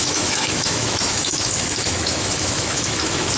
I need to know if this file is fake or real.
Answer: fake